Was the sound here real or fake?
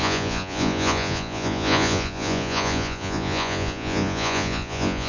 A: fake